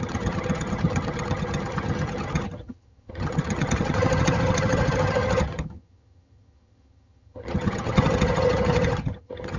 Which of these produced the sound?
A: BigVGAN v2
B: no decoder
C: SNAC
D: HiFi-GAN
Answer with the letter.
D